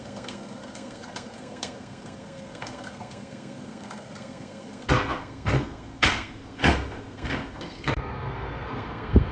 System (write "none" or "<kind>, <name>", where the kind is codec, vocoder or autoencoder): codec, SNAC